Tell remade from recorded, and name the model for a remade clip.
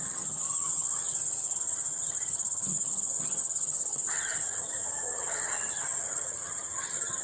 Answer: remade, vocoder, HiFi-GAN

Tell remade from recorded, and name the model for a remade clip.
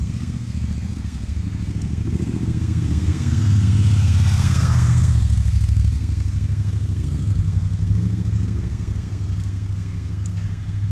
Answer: remade, codec, SNAC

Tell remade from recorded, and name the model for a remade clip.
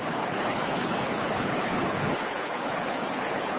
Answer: remade, codec, HILCodec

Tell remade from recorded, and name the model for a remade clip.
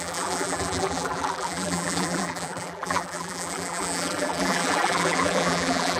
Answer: remade, vocoder, BigVGAN v2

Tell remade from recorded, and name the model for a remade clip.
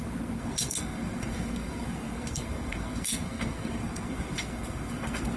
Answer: remade, codec, SNAC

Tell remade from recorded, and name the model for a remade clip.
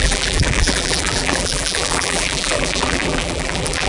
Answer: remade, vocoder, BigVGAN v2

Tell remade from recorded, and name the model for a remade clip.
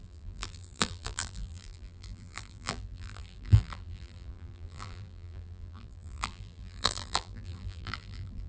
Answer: remade, vocoder, BigVGAN v2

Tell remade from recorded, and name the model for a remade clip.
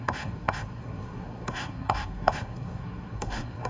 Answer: remade, codec, SNAC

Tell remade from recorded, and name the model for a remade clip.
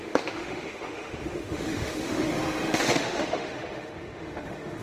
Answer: remade, autoencoder, DAC-VAE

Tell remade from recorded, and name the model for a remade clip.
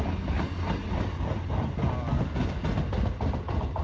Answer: recorded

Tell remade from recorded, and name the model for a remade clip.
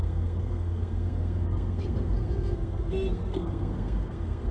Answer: remade, codec, SNAC